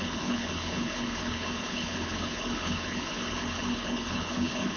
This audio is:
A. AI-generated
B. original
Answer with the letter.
A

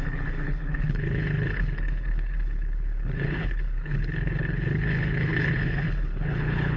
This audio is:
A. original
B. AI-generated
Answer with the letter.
B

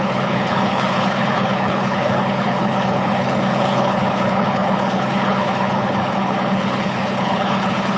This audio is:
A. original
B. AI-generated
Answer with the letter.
B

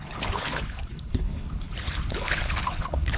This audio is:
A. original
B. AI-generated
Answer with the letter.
B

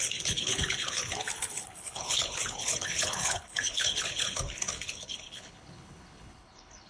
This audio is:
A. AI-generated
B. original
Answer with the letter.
A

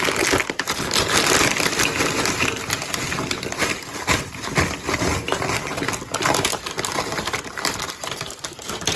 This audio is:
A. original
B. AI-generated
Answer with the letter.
A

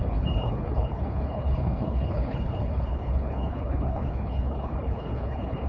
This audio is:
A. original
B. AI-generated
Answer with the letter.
B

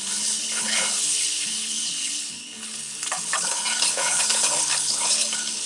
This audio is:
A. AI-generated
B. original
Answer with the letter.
A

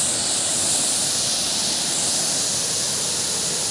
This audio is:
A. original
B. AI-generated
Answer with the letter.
A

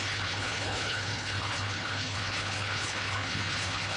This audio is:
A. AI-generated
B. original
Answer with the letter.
A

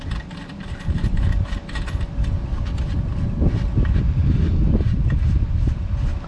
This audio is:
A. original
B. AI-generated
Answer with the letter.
A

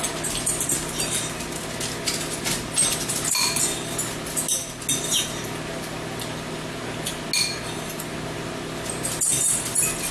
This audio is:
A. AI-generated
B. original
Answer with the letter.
B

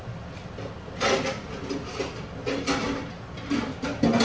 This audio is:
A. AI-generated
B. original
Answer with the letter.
B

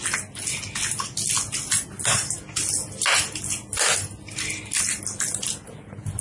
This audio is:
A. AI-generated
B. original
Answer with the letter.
B